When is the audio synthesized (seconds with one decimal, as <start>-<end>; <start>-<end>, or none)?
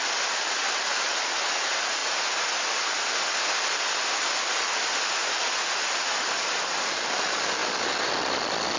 none